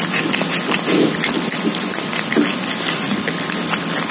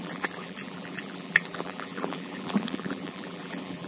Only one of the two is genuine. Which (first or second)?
first